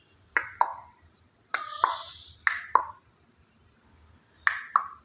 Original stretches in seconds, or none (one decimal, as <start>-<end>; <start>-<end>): 0.0-5.0